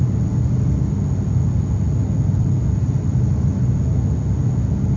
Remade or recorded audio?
recorded